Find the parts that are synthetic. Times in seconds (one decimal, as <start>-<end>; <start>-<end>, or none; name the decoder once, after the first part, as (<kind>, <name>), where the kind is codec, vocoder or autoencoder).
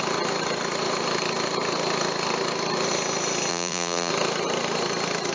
3.5-4.1 (vocoder, BigVGAN v2)